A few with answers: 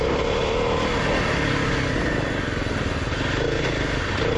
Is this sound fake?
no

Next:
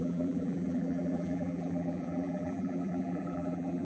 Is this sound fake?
yes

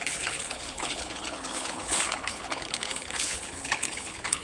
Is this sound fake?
yes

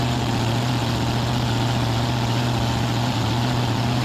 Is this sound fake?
no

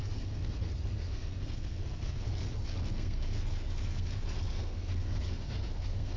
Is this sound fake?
yes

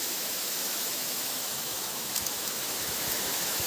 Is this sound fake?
yes